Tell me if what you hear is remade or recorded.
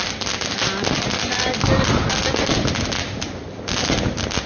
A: recorded